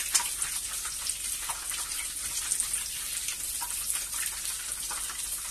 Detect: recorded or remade recorded